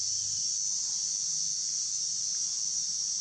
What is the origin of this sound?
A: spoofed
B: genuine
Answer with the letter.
B